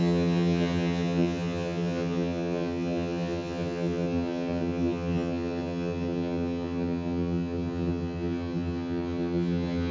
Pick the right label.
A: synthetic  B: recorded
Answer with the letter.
A